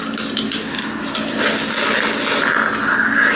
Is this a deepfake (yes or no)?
no